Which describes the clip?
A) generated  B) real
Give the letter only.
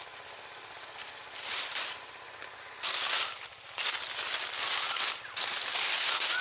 B